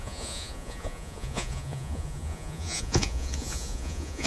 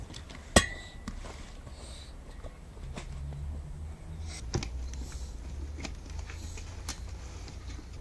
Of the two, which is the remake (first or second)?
first